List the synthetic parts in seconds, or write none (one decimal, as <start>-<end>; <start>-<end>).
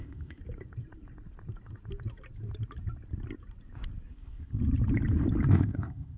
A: 0.0-0.4; 4.1-4.6; 5.5-6.2